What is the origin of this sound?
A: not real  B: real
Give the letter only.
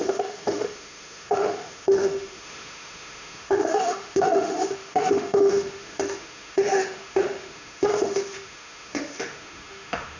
A